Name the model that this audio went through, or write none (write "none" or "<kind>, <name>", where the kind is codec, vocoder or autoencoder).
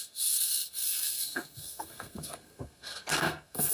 codec, SNAC